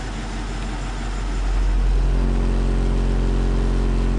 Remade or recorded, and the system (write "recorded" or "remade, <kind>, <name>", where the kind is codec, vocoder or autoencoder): recorded